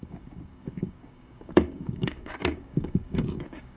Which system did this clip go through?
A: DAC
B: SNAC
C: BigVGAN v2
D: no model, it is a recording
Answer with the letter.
A